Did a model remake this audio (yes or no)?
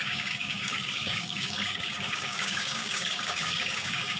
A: yes